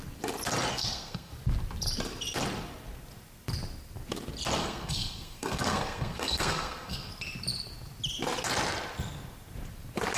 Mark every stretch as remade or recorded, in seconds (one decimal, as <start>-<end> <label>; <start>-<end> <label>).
0.0-0.7 recorded; 0.7-1.3 remade; 1.3-4.6 recorded; 4.6-7.1 remade; 7.1-10.2 recorded